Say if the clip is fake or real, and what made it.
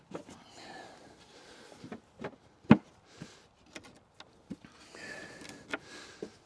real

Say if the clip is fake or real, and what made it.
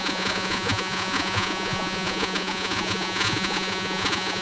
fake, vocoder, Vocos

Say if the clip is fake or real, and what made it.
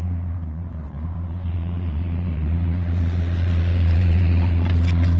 fake, vocoder, Vocos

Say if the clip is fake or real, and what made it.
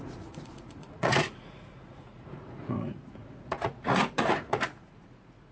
fake, vocoder, Vocos